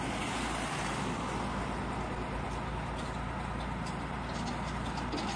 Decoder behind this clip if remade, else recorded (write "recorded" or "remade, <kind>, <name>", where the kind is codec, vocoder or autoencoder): recorded